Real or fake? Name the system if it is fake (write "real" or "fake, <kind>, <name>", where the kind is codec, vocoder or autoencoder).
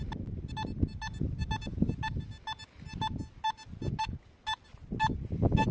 real